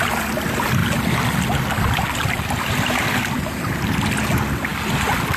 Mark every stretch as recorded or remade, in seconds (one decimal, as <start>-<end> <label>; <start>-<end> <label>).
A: 0.0-5.4 recorded